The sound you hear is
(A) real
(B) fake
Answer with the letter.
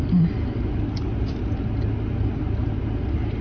A